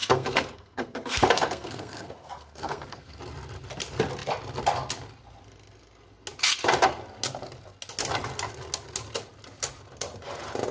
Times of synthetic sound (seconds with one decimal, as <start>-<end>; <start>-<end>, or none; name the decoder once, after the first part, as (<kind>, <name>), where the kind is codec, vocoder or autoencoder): 0.0-3.2 (codec, SNAC)